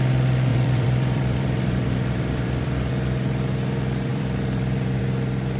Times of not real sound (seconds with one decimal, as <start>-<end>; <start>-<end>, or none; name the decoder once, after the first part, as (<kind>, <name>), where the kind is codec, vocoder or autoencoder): 0.5-2.9 (vocoder, BigVGAN v2); 4.1-5.0